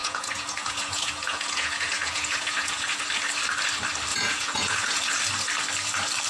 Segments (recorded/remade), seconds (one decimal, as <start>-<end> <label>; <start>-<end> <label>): 0.0-3.0 remade; 3.0-4.1 recorded; 4.1-5.2 remade; 5.2-6.3 recorded